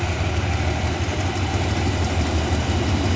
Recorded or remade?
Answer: recorded